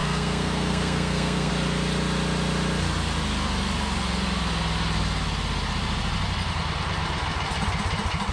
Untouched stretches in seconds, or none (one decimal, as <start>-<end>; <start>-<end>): 1.5-8.3